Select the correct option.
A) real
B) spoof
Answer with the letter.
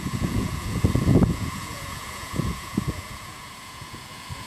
B